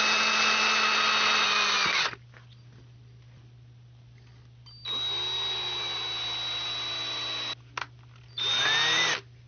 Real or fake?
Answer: real